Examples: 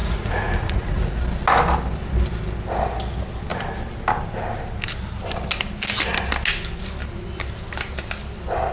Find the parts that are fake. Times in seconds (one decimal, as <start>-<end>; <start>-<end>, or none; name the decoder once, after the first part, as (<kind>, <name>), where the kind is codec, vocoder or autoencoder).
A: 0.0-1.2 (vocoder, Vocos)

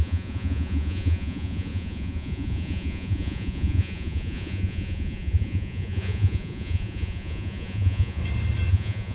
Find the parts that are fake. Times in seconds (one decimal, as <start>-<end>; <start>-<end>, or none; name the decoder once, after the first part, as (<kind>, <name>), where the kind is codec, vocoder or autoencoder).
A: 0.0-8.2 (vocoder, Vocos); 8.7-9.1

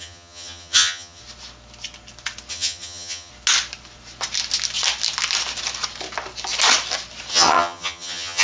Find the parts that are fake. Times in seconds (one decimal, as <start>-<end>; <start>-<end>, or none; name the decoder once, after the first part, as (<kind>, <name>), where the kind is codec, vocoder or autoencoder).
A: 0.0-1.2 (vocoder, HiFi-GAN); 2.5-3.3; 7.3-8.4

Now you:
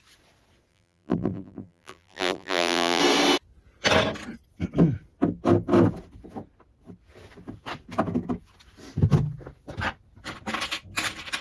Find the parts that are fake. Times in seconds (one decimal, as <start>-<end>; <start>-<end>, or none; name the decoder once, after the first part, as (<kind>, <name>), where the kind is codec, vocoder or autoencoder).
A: 0.7-3.0 (vocoder, BigVGAN v2)

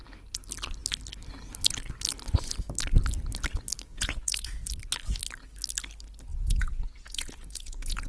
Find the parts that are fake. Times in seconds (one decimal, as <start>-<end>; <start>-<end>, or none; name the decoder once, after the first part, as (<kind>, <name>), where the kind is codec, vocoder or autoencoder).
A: 3.9-4.7 (vocoder, Vocos); 6.3-8.1